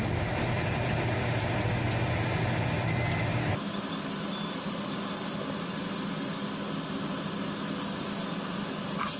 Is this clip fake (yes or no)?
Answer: no